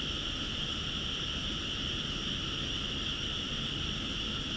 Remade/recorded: recorded